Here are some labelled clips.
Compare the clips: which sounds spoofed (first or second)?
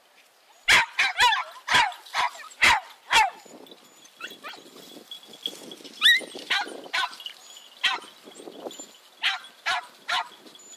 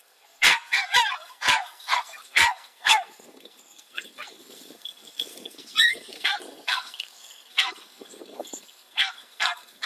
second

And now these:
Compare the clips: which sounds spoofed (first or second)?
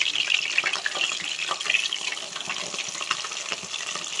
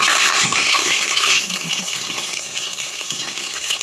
second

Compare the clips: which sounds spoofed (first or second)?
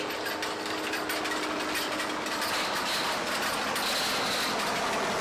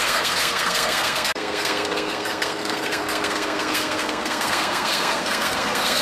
second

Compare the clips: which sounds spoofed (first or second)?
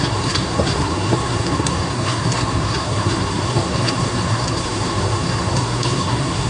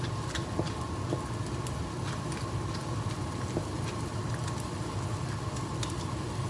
first